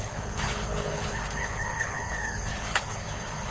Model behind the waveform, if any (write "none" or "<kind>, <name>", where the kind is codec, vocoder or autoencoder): codec, HILCodec